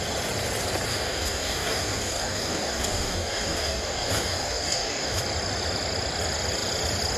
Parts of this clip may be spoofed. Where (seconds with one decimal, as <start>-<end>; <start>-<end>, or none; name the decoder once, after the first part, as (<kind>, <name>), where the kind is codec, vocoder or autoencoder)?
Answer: 0.9-5.2 (codec, DAC)